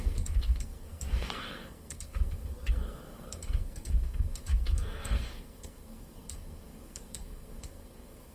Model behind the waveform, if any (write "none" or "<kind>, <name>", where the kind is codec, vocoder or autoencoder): codec, SNAC